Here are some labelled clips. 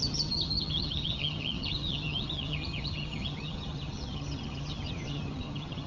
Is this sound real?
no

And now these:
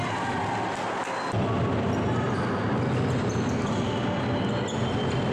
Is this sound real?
yes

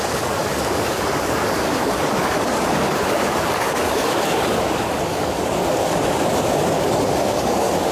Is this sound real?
no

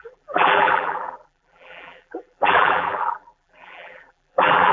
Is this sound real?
no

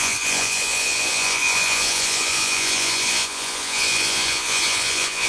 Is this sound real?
no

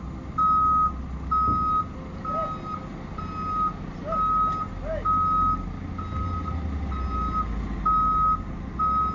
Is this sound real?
yes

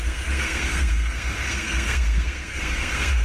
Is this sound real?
no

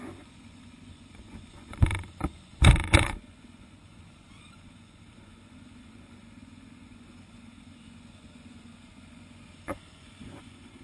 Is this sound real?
no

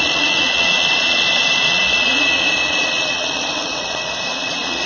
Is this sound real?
no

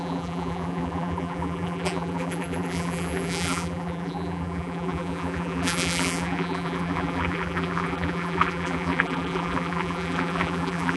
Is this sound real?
no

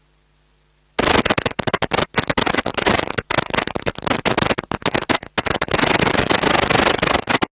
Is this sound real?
yes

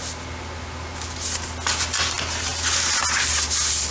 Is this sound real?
yes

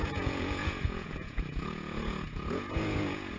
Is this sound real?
no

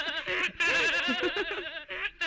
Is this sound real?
yes